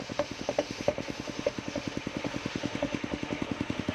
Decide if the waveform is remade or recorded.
remade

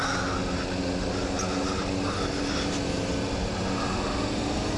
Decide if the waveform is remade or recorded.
recorded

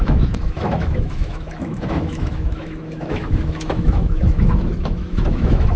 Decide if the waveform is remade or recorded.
remade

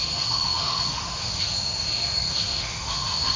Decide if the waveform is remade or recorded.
remade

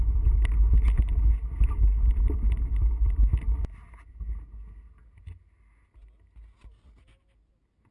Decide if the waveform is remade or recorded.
recorded